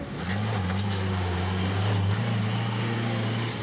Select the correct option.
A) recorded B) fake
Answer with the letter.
A